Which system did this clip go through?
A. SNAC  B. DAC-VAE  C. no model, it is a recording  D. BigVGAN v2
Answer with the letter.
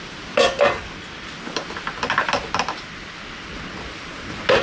C